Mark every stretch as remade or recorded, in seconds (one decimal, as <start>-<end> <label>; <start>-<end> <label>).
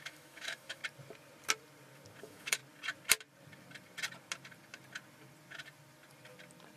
0.0-0.8 remade; 0.8-2.2 recorded; 2.2-2.6 remade; 2.6-6.8 recorded